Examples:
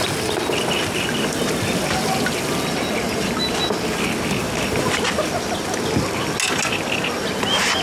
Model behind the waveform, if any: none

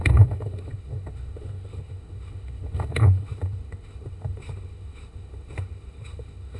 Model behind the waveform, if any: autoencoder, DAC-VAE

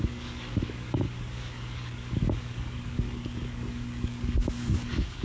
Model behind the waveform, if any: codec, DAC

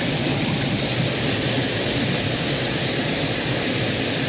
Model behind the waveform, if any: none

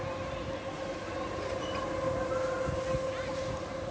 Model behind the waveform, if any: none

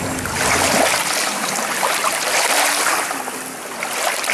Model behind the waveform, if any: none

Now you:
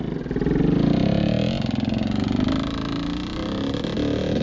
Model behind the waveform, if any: none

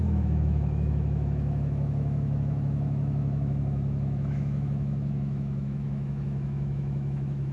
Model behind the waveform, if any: autoencoder, DAC-VAE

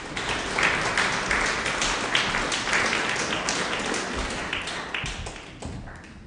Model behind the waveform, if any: none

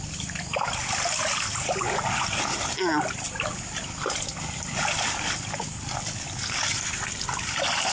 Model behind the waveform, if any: none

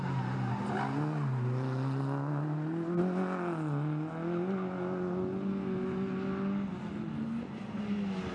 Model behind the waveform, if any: none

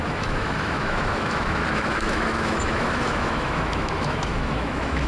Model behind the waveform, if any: autoencoder, DAC-VAE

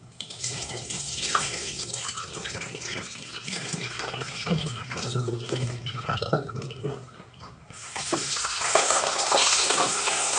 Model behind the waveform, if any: codec, SNAC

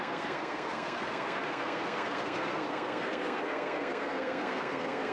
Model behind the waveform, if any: codec, SNAC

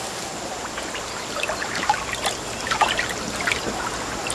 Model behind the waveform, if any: none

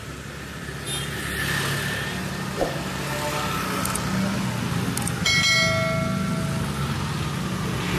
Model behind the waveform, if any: none